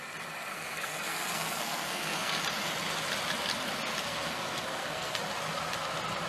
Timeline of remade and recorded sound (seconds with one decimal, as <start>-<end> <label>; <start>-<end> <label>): 0.0-0.5 recorded; 0.5-2.4 remade; 2.4-4.0 recorded; 4.0-5.2 remade; 5.2-6.3 recorded